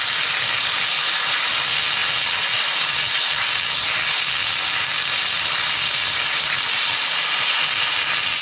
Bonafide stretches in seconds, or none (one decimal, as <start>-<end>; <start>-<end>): 0.0-4.4; 5.6-8.4